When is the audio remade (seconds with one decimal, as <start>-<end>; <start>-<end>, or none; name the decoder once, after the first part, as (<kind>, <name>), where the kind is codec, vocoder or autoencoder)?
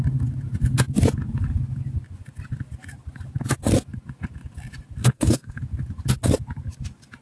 5.0-5.6 (codec, SNAC)